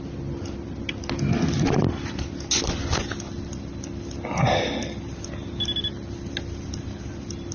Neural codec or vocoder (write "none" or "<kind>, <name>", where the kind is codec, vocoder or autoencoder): none